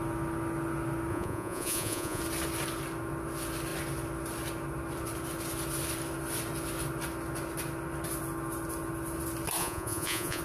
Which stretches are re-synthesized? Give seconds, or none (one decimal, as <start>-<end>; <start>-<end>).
1.1-2.2; 9.6-10.4